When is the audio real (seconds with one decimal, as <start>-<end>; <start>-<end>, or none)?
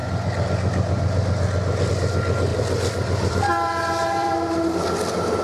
0.0-2.5; 4.7-5.4